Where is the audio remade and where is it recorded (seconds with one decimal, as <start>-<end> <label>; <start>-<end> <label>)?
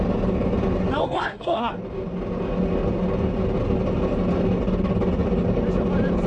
0.0-1.0 recorded; 1.0-1.7 remade; 1.7-6.3 recorded